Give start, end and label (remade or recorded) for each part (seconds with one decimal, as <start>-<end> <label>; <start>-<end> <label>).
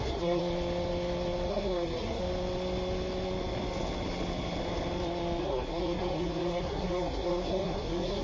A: 0.0-0.4 remade; 0.4-1.5 recorded; 1.5-2.2 remade; 2.2-5.4 recorded; 5.4-8.2 remade